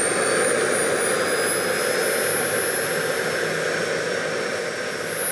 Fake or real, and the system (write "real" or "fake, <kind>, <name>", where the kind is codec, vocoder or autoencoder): real